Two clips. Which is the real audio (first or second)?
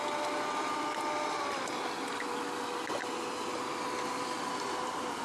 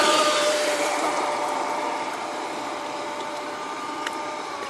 first